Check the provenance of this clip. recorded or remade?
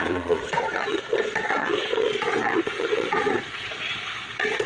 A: remade